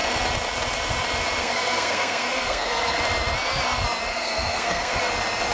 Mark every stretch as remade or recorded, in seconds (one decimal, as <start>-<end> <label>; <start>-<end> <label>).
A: 0.0-1.4 recorded; 1.4-3.0 remade; 3.0-4.1 recorded; 4.1-5.0 remade; 5.0-5.5 recorded